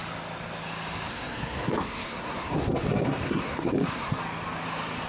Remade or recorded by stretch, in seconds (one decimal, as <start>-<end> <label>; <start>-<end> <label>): 0.0-1.1 recorded; 1.1-4.2 remade; 4.2-5.1 recorded